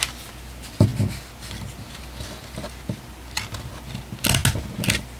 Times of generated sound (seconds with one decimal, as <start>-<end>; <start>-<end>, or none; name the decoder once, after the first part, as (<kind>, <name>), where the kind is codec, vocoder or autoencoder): none